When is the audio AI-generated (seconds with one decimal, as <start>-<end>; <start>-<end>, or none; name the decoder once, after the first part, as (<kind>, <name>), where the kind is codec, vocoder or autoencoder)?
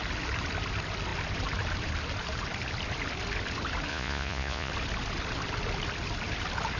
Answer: 3.9-4.7 (vocoder, Vocos)